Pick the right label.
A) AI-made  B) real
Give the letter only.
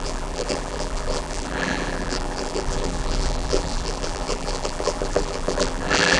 A